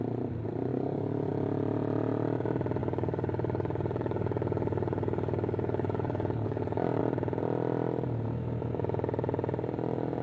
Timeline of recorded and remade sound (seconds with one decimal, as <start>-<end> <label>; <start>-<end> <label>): 0.0-0.7 recorded; 0.7-1.3 remade; 1.3-2.8 recorded; 2.8-7.0 remade; 7.0-10.2 recorded